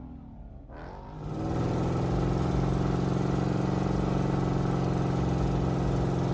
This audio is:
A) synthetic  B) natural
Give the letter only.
B